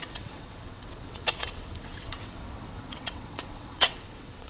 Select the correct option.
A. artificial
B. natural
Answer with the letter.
A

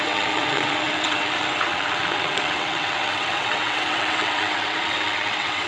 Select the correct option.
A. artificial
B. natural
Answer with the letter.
A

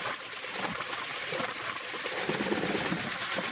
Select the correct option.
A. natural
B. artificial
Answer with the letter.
A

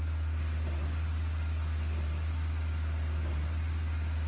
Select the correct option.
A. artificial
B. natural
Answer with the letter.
B